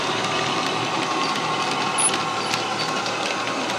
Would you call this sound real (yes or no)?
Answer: yes